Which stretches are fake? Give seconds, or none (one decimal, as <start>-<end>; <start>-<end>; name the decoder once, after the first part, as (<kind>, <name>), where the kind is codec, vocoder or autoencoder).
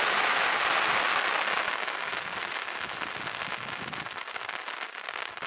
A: none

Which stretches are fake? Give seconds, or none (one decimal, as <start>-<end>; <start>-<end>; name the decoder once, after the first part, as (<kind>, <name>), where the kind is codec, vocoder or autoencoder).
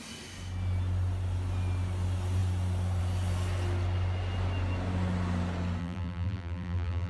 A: 5.8-7.1 (vocoder, BigVGAN v2)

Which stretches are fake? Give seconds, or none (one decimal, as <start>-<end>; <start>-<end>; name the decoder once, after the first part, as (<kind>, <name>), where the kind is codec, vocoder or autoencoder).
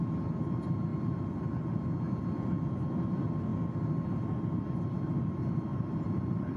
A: 5.7-6.6 (vocoder, BigVGAN v2)